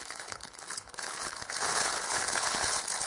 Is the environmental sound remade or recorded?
remade